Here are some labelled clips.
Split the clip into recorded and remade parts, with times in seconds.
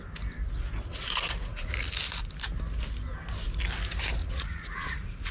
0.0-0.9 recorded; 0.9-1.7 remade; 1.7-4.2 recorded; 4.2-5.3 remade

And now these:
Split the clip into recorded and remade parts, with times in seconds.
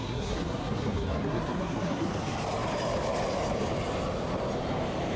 0.0-2.1 remade; 2.1-5.2 recorded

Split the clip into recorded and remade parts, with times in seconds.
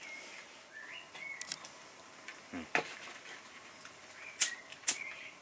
0.0-5.4 recorded